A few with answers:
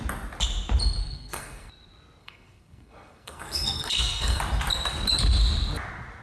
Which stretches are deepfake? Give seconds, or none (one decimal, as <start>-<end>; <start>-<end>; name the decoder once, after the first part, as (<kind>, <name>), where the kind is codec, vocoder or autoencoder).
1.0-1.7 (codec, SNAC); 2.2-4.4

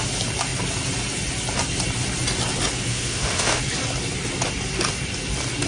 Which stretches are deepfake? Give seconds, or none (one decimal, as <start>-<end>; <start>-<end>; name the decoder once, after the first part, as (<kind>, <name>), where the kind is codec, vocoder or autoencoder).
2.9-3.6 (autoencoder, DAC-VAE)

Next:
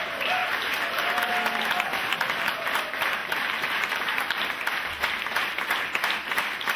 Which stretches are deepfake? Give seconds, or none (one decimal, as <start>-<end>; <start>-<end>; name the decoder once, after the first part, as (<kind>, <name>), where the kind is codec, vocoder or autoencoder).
0.4-1.3 (vocoder, BigVGAN v2); 3.2-4.4

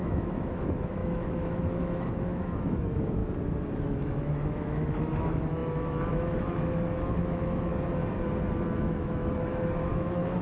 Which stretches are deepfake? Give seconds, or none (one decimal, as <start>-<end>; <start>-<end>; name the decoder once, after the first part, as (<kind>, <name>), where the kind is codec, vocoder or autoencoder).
0.0-3.2 (autoencoder, DAC-VAE); 3.8-7.7; 8.8-10.4

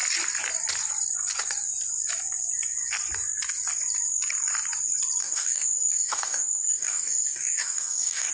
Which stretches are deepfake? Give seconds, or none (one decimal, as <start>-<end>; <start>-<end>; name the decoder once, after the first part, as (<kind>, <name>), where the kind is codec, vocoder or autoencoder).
5.2-8.3 (codec, DAC)